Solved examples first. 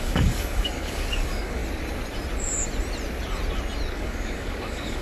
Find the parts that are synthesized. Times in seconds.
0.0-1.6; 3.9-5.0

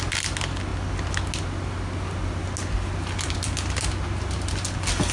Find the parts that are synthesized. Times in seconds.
none

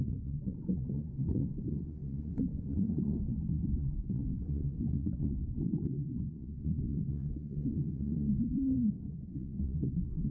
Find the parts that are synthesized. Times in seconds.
0.0-10.3

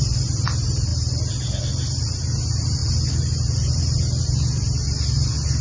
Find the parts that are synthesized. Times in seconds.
none

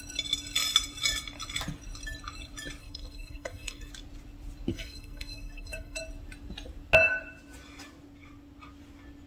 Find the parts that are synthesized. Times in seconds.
2.8-3.9; 4.7-6.0

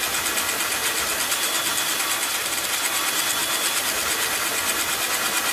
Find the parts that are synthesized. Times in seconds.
none